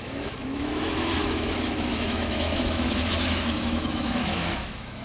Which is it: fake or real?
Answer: fake